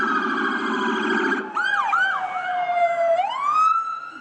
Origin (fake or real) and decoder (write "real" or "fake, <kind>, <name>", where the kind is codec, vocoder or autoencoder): real